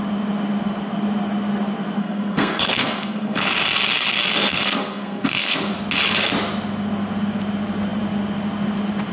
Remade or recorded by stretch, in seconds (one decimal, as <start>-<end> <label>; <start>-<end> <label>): 0.0-2.0 recorded; 2.0-3.4 remade; 3.4-4.5 recorded; 4.5-5.7 remade; 5.7-9.1 recorded